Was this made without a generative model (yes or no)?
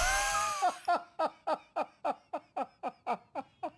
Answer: yes